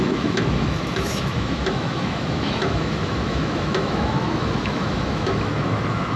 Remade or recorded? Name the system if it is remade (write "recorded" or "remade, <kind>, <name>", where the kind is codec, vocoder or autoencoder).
remade, autoencoder, DAC-VAE